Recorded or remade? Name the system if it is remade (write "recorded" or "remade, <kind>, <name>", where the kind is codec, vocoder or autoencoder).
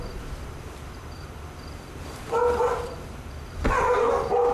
recorded